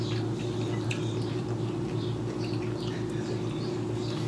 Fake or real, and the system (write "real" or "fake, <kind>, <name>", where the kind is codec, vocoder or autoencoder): real